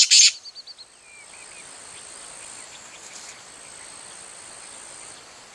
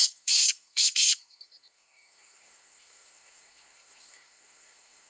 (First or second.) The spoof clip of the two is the second